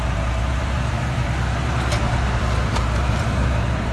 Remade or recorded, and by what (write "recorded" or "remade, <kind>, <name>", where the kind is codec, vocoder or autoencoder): remade, vocoder, BigVGAN v2